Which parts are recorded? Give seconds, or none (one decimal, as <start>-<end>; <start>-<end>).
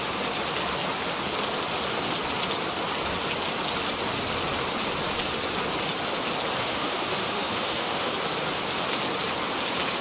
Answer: 0.0-6.6; 8.1-10.0